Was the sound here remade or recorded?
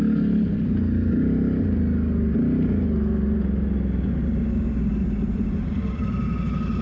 recorded